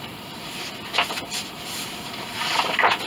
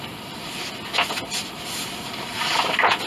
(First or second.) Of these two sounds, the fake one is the first